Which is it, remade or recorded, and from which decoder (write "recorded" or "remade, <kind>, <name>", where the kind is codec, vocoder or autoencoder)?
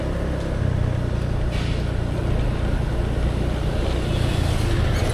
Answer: recorded